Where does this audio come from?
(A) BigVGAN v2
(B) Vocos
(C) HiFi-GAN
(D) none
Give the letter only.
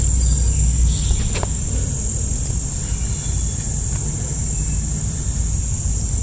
D